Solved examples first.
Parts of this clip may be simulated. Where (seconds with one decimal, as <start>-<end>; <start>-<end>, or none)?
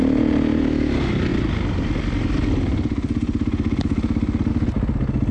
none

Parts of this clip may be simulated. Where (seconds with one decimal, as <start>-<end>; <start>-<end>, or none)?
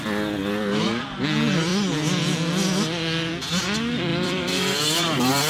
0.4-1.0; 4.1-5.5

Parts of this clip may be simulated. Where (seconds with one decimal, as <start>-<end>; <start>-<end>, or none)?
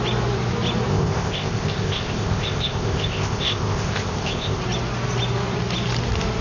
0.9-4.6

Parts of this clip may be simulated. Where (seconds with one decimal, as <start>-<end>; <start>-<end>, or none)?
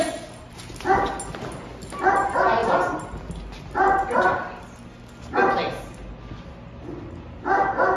none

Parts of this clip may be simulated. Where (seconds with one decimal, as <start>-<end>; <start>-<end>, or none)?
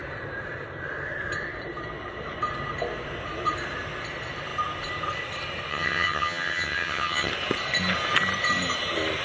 5.7-7.3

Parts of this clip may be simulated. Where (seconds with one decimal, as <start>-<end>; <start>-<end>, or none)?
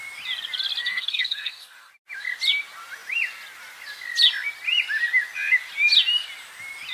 0.8-1.9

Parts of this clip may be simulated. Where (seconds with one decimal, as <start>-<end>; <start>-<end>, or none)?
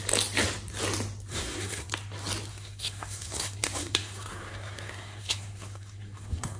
1.3-1.9; 2.5-6.6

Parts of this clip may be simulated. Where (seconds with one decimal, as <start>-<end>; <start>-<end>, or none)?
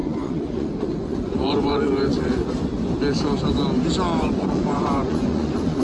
0.0-2.4; 4.2-5.8